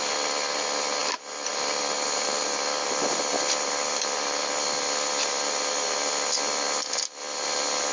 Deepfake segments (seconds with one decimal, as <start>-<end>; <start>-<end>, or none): none